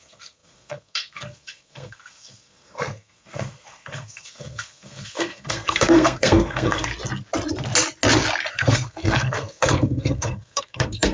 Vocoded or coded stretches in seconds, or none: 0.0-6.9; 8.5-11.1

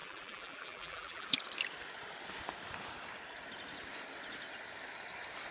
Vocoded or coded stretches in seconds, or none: 0.0-1.3

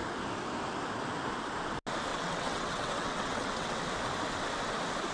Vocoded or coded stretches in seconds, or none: 2.1-3.8

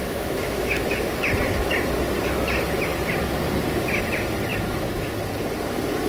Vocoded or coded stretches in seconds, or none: 0.0-1.2; 4.5-5.1

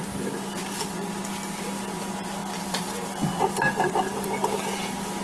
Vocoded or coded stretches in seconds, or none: 0.6-1.1; 2.4-3.4

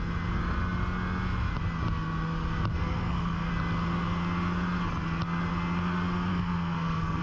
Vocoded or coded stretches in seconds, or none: 2.7-3.5; 6.3-7.2

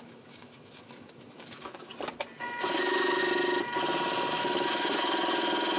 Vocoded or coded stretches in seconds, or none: 0.0-1.9; 2.7-3.2; 4.3-5.8

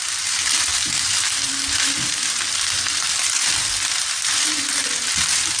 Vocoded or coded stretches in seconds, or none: 0.0-5.6